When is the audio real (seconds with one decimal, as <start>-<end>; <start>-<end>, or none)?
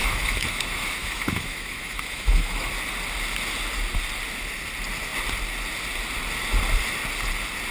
2.7-7.7